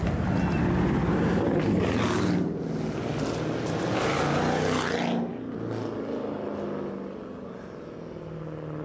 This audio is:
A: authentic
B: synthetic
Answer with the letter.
A